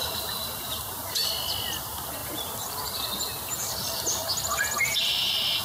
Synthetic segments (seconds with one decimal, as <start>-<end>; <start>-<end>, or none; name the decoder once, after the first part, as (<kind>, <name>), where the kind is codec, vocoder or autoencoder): 0.0-4.2 (vocoder, BigVGAN v2); 5.0-5.6